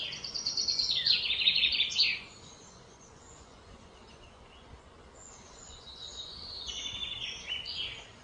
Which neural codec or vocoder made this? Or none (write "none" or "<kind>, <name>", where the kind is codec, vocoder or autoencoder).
vocoder, Vocos